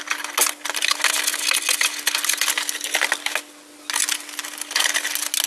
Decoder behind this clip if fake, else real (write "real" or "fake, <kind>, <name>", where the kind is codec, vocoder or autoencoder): real